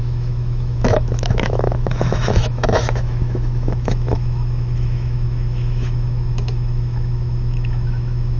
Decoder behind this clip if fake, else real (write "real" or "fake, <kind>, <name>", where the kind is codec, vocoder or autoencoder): fake, autoencoder, DAC-VAE